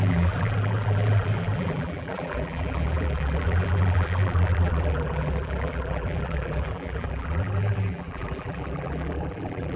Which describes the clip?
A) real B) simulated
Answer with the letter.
B